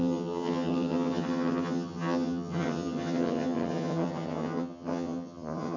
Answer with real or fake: fake